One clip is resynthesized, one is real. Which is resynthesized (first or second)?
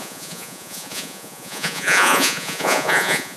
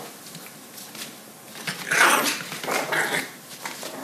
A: first